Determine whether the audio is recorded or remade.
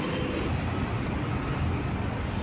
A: remade